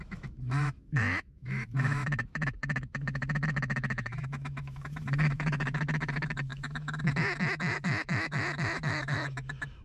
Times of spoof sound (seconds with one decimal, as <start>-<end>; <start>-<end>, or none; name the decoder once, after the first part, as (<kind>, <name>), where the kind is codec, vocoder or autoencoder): 0.0-9.8 (autoencoder, DAC-VAE)